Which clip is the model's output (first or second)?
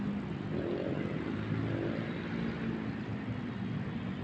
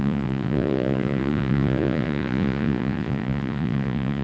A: second